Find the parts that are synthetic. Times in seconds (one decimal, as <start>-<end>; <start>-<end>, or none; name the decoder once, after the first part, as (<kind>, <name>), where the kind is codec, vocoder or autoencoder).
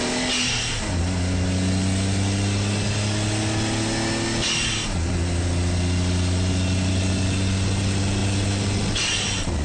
none